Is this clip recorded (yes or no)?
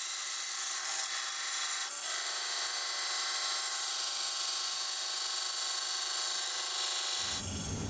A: yes